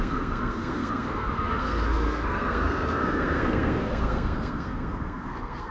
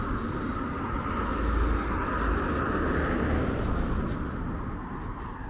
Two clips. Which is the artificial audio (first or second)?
first